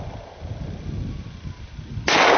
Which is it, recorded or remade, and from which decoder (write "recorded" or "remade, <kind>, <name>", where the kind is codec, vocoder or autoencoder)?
recorded